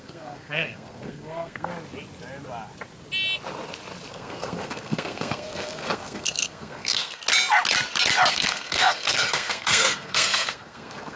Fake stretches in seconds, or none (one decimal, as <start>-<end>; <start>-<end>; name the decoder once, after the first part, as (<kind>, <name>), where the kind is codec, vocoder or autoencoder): 0.0-1.7 (codec, SNAC); 4.1-7.2; 8.3-11.2